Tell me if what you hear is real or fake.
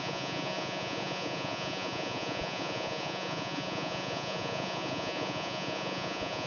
fake